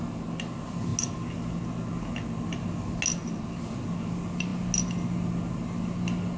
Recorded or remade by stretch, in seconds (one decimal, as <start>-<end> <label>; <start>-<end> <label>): 0.0-6.4 recorded